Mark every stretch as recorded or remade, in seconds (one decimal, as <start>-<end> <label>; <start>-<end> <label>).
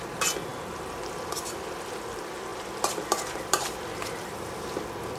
0.0-2.5 recorded; 2.5-4.6 remade; 4.6-5.2 recorded